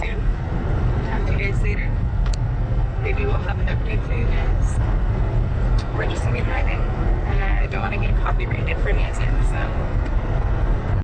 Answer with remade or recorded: remade